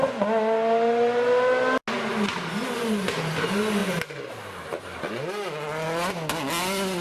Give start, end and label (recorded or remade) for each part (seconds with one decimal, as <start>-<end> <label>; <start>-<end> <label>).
0.0-7.0 recorded